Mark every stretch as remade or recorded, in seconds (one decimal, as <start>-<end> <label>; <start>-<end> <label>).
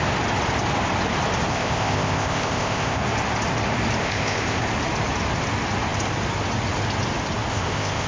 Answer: 0.0-1.5 recorded; 1.5-3.0 remade; 3.0-4.0 recorded; 4.0-4.6 remade; 4.6-7.5 recorded; 7.5-8.1 remade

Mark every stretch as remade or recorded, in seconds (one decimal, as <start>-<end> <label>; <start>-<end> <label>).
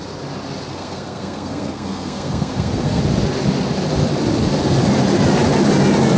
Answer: 0.0-0.7 recorded; 0.7-3.0 remade; 3.0-6.2 recorded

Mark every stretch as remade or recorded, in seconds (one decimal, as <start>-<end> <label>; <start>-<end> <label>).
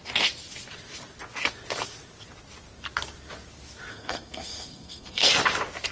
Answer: 0.0-3.9 recorded; 3.9-5.3 remade; 5.3-5.9 recorded